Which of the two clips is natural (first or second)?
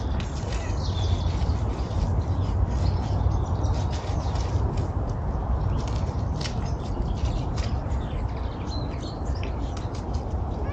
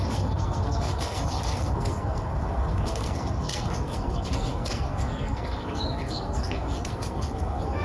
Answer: first